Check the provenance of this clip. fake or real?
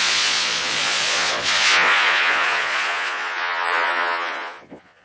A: fake